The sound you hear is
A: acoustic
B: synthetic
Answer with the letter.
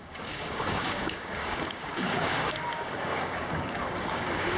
B